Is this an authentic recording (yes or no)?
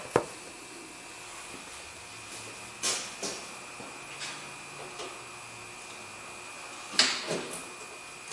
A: yes